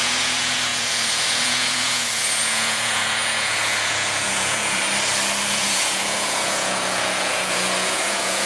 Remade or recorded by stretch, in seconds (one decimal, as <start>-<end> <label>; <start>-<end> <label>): 0.0-4.8 remade; 4.8-5.5 recorded; 5.5-8.5 remade

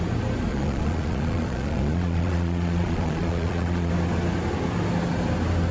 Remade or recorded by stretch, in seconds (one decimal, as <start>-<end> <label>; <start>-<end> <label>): 0.0-0.5 recorded; 0.5-3.9 remade; 3.9-5.7 recorded

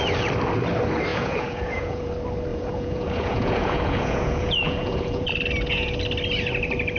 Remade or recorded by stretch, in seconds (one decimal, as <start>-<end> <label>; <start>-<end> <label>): 0.0-1.1 recorded; 1.1-2.1 remade; 2.1-2.5 recorded; 2.5-5.3 remade; 5.3-7.0 recorded